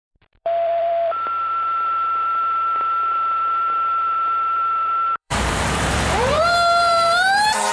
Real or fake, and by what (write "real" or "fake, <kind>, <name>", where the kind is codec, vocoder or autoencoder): fake, vocoder, BigVGAN v2